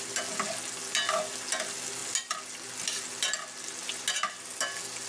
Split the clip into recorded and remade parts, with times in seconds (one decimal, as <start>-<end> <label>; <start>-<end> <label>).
0.0-5.1 recorded